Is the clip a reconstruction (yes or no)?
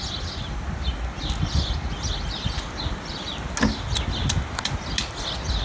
no